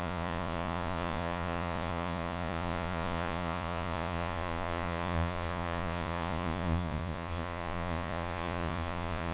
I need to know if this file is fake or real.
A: fake